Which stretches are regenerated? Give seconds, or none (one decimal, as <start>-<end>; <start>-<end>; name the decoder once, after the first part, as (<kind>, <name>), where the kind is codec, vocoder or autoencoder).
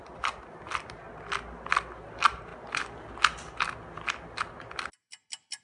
none